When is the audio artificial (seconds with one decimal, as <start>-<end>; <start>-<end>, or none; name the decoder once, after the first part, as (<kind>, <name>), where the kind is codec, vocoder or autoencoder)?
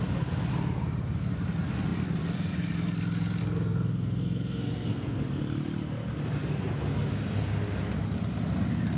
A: 3.4-5.4 (codec, SNAC)